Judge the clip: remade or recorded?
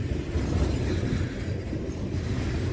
recorded